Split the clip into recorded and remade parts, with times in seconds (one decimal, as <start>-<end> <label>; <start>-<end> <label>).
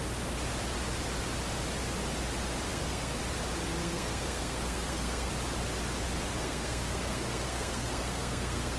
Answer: 0.0-2.7 recorded; 2.7-3.2 remade; 3.2-3.8 recorded; 3.8-5.3 remade; 5.3-6.4 recorded; 6.4-8.8 remade